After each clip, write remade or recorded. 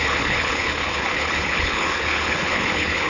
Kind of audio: remade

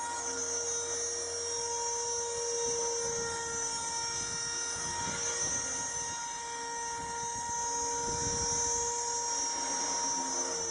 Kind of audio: recorded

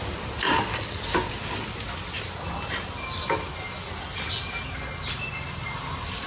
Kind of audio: recorded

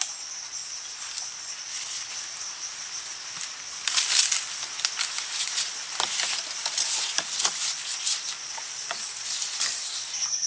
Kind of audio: recorded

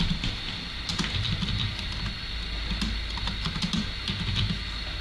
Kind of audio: recorded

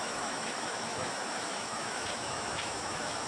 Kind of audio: remade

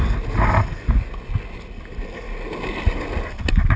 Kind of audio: recorded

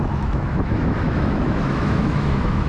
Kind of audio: remade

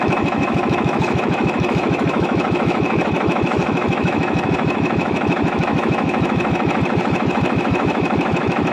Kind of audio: remade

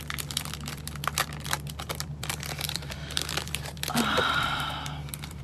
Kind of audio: remade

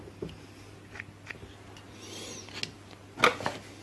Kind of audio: recorded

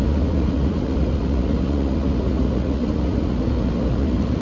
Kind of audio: remade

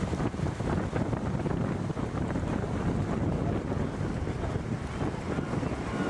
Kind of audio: recorded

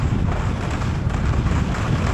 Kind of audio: recorded